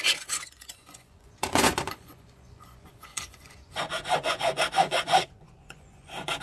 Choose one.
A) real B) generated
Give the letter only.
B